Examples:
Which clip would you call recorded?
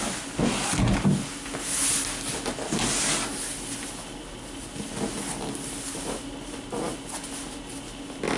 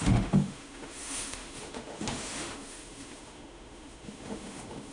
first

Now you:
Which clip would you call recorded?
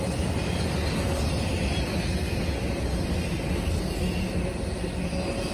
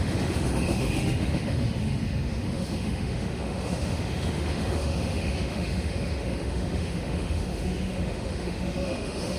first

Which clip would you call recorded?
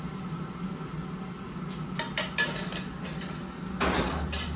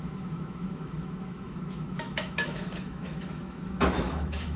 first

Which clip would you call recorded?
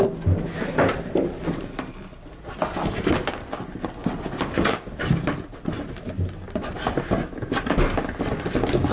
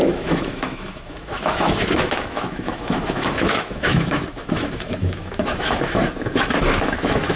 first